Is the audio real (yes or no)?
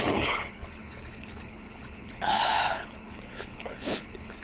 no